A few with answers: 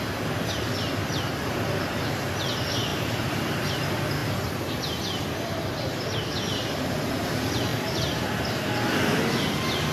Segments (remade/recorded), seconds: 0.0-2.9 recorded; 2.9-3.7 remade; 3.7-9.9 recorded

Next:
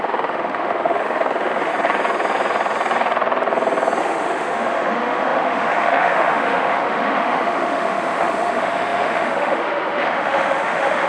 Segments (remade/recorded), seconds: 0.0-1.7 remade; 1.7-4.0 recorded; 4.0-11.1 remade

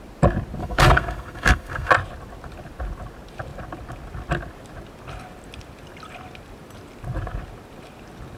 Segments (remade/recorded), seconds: 0.0-0.6 recorded; 0.6-1.9 remade; 1.9-8.4 recorded

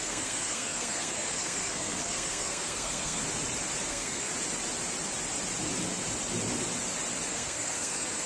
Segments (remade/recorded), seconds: 0.0-3.2 remade; 3.2-3.9 recorded; 3.9-4.3 remade; 4.3-7.3 recorded; 7.3-8.3 remade

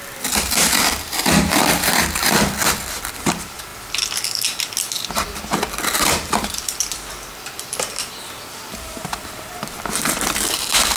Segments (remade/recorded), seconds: 0.0-3.7 remade; 3.7-5.1 recorded; 5.1-11.0 remade